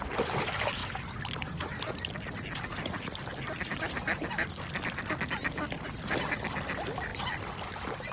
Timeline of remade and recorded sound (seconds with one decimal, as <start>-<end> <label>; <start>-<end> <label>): 0.0-0.8 recorded; 0.8-3.9 remade; 3.9-8.1 recorded